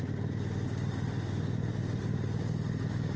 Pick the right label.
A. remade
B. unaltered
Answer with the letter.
B